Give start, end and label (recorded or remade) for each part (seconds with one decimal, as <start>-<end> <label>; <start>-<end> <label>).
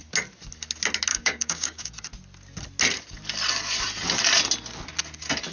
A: 0.0-1.1 recorded; 1.1-1.9 remade; 1.9-5.5 recorded